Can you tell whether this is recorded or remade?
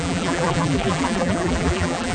remade